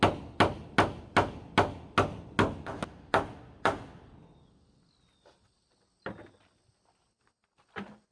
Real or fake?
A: real